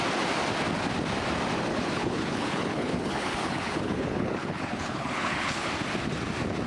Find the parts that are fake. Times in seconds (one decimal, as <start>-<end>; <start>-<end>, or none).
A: 1.7-5.7